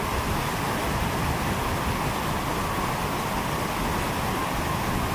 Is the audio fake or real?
real